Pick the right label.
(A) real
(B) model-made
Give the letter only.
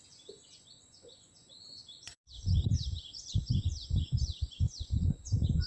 B